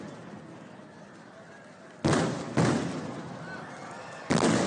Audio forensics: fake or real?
real